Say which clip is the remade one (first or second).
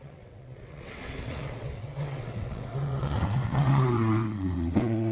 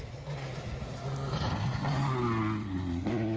first